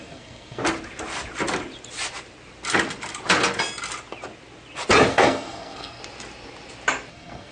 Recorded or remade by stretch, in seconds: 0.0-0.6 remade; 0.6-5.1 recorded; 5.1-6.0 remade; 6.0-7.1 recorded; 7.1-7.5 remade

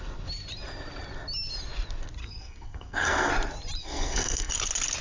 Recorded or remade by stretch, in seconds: 0.0-2.2 recorded; 2.2-3.3 remade; 3.3-3.8 recorded; 3.8-4.5 remade; 4.5-5.0 recorded

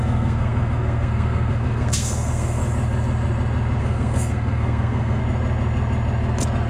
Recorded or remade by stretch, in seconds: 0.0-2.6 remade; 2.6-3.8 recorded; 3.8-5.2 remade; 5.2-6.7 recorded

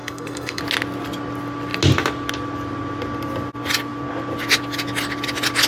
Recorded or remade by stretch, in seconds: 0.0-0.6 remade; 0.6-5.7 recorded

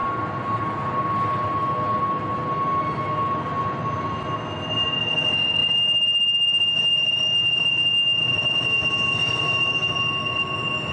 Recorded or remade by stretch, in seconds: 0.0-10.9 recorded

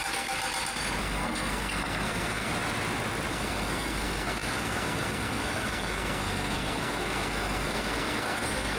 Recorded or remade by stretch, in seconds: 0.0-0.4 remade; 0.4-1.0 recorded; 1.0-2.5 remade; 2.5-3.3 recorded; 3.3-8.8 remade